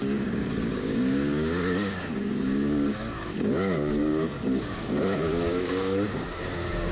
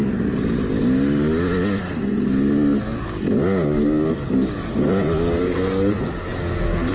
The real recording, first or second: second